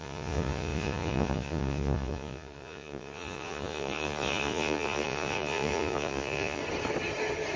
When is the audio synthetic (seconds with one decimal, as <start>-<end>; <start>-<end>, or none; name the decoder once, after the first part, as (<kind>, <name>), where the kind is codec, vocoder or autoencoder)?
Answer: 0.0-6.6 (vocoder, Vocos)